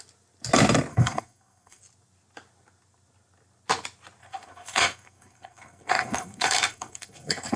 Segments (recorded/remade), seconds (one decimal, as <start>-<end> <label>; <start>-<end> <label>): 0.0-0.9 recorded; 0.9-1.8 remade; 1.8-4.2 recorded; 4.2-7.6 remade